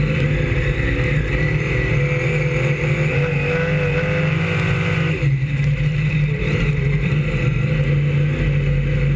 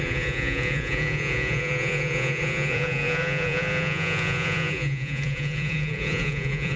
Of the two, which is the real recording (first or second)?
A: first